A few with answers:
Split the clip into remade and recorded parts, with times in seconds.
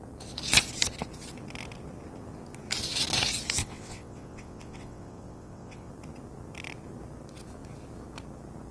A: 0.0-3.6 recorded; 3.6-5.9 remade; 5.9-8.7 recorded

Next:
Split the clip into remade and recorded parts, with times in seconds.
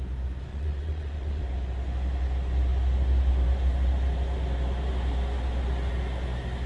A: 0.0-0.5 recorded; 0.5-1.4 remade; 1.4-6.7 recorded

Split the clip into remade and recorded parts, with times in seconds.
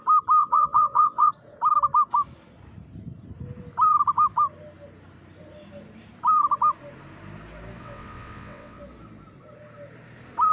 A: 0.0-0.4 recorded; 0.4-1.3 remade; 1.3-7.8 recorded; 7.8-8.8 remade; 8.8-10.5 recorded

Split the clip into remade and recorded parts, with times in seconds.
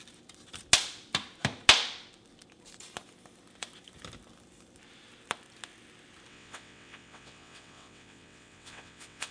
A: 0.0-6.3 recorded; 6.3-9.3 remade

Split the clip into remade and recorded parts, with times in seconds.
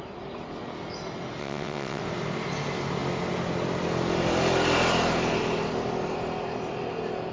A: 0.0-1.4 recorded; 1.4-2.0 remade; 2.0-7.3 recorded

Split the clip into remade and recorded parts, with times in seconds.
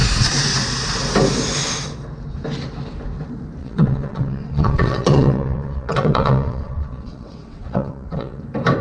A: 0.0-3.6 recorded; 3.6-8.4 remade; 8.4-8.8 recorded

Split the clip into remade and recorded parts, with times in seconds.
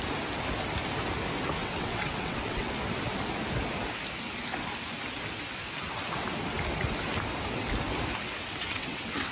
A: 0.0-1.6 recorded; 1.6-2.7 remade; 2.7-8.6 recorded; 8.6-9.3 remade